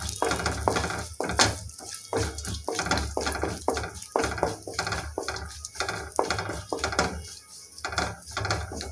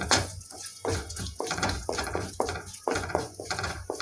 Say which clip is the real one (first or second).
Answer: first